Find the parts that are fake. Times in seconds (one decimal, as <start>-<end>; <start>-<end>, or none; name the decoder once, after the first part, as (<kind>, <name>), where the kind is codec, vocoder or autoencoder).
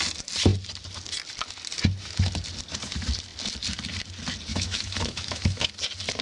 4.5-5.7 (autoencoder, DAC-VAE)